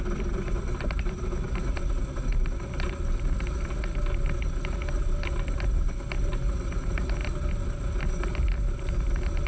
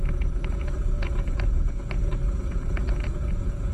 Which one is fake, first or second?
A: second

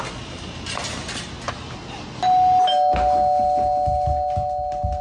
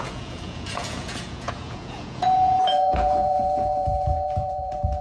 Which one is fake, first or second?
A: second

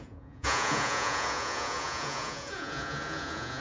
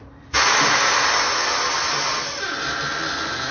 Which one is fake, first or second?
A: first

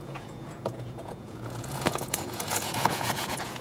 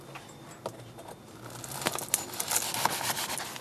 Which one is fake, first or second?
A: first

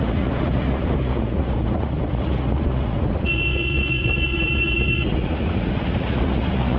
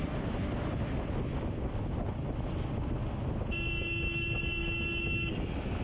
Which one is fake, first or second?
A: first